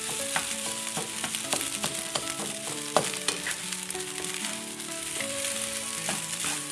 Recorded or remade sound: remade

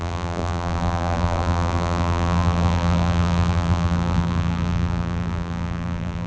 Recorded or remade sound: remade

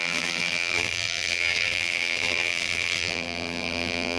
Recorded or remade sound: remade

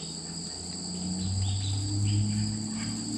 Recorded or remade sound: recorded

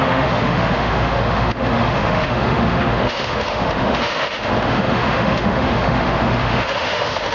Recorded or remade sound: remade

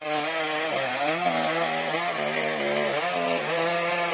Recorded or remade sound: recorded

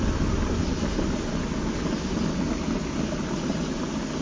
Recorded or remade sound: recorded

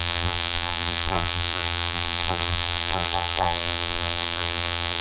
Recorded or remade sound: remade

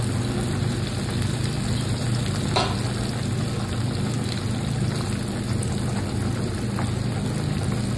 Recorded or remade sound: recorded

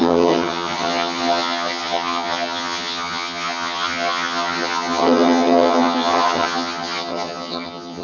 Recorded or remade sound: remade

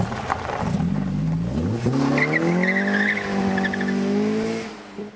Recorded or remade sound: recorded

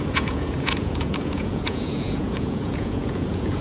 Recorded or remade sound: remade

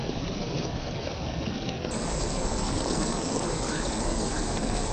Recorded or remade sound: remade